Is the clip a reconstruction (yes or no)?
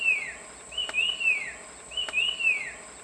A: no